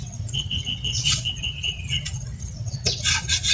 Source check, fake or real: fake